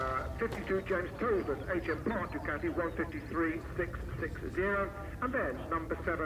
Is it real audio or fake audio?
real